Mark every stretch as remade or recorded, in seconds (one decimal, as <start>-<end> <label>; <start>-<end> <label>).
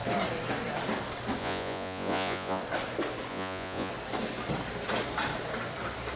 0.0-1.4 recorded; 1.4-2.6 remade; 2.6-3.3 recorded; 3.3-3.9 remade; 3.9-6.2 recorded